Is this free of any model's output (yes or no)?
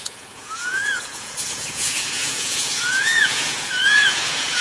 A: no